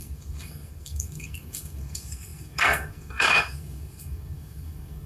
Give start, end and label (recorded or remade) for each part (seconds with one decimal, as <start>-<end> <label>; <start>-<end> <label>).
0.0-5.1 remade